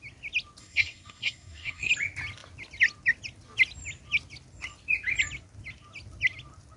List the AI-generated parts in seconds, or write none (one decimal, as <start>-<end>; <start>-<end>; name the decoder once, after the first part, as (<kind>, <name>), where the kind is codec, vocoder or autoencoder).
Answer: 0.6-1.9 (codec, SNAC)